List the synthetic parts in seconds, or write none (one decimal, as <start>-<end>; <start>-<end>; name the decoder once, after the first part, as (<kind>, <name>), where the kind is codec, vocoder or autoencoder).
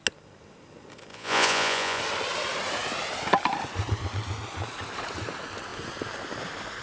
1.1-2.0 (vocoder, Vocos)